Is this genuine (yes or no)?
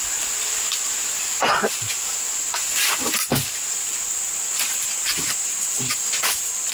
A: no